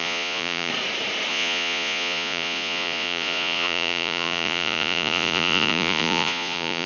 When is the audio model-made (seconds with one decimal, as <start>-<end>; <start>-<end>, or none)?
0.0-0.7; 1.3-6.9